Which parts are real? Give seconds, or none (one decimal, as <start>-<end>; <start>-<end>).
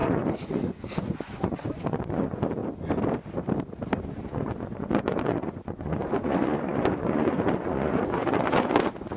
2.6-4.2